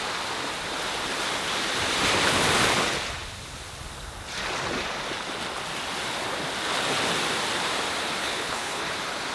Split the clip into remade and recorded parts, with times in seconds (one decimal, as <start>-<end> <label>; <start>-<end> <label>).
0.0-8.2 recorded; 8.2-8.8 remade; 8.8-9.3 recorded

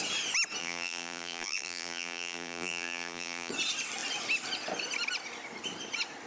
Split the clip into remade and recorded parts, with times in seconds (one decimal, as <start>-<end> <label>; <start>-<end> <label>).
0.0-0.6 recorded; 0.6-3.5 remade; 3.5-6.3 recorded

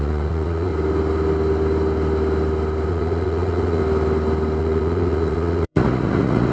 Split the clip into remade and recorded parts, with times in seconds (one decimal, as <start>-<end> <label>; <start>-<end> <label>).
0.0-0.7 remade; 0.7-2.9 recorded; 2.9-3.8 remade; 3.8-4.6 recorded; 4.6-6.5 remade